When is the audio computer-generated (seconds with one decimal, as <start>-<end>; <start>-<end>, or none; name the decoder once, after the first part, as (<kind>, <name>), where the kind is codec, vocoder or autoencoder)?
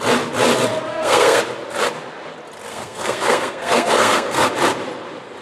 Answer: 0.9-1.4 (codec, SNAC); 2.7-4.5